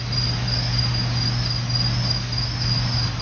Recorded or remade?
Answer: recorded